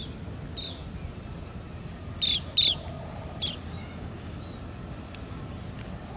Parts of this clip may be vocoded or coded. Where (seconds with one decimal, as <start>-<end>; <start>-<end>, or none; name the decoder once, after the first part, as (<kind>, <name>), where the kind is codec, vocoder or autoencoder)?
3.8-4.4 (codec, DAC)